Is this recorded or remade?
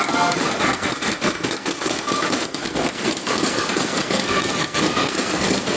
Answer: remade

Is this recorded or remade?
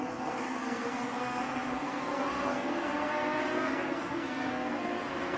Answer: remade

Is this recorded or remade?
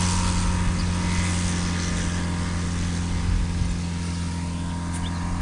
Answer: recorded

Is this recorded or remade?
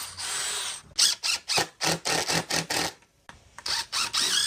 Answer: recorded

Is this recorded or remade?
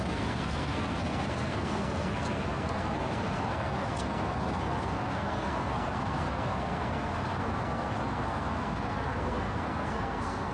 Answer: remade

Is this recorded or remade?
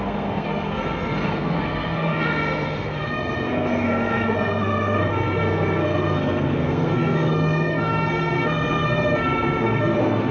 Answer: remade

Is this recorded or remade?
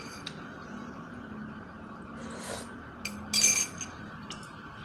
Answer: recorded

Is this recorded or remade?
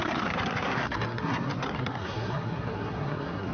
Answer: remade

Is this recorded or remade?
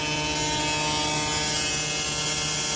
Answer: recorded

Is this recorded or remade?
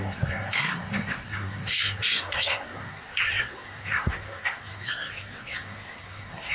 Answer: remade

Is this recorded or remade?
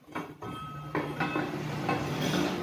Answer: recorded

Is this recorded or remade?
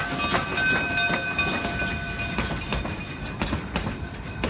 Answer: recorded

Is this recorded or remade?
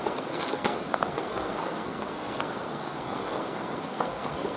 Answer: remade